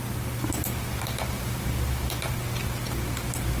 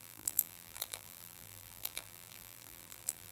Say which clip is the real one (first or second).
first